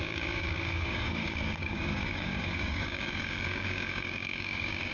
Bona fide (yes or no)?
no